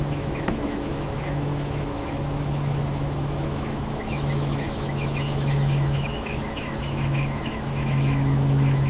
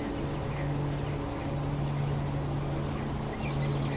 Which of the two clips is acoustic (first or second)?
second